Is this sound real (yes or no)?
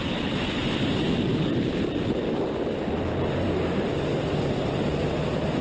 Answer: yes